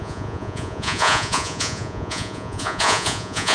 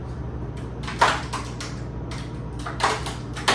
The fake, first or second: first